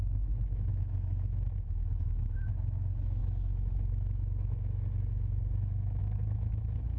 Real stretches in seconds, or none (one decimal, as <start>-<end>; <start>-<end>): none